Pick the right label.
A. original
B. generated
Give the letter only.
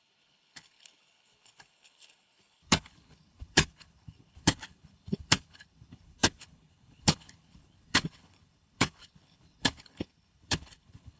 B